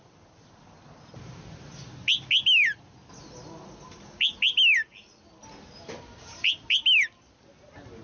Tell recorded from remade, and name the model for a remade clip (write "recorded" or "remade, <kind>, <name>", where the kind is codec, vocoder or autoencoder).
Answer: recorded